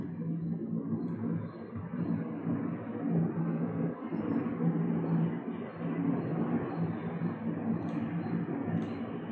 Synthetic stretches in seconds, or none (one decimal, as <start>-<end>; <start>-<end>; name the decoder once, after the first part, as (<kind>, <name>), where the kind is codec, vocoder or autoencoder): 3.4-4.2 (codec, SNAC)